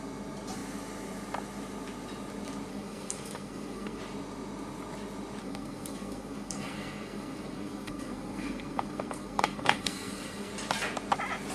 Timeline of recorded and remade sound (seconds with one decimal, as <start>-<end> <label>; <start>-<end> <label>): 0.0-2.7 recorded; 2.7-4.0 remade; 4.0-5.4 recorded; 5.4-10.5 remade; 10.5-11.5 recorded